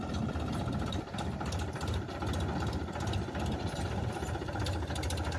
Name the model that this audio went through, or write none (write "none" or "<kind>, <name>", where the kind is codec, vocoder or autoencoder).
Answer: none